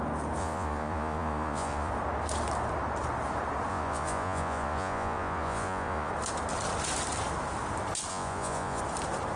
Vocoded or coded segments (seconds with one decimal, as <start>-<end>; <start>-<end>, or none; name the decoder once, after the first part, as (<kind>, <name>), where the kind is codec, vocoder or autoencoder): 0.4-1.9 (vocoder, Vocos); 3.7-6.1; 8.1-8.8